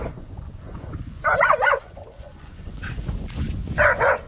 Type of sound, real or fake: fake